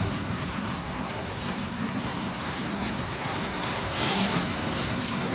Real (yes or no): no